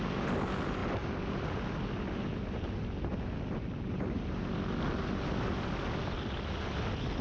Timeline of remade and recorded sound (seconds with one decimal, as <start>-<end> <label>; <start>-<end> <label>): 0.0-7.2 recorded

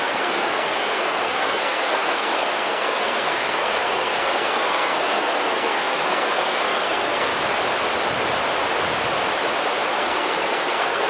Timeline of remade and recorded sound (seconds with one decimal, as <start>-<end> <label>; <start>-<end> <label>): 0.0-7.3 remade; 7.3-9.9 recorded; 9.9-11.1 remade

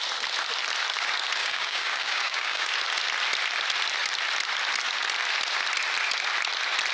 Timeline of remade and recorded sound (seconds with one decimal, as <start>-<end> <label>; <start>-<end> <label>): 0.0-1.4 recorded; 1.4-2.7 remade; 2.7-6.9 recorded

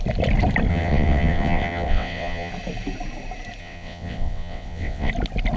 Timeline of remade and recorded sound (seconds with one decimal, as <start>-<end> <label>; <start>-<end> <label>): 0.0-0.7 recorded; 0.7-2.5 remade; 2.5-3.6 recorded; 3.6-5.1 remade; 5.1-5.6 recorded

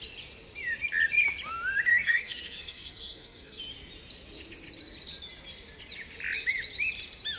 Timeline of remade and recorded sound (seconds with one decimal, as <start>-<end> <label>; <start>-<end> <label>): 0.0-1.9 recorded; 1.9-3.6 remade; 3.6-7.4 recorded